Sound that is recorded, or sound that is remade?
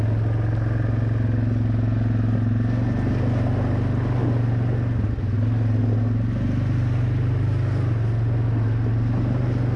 recorded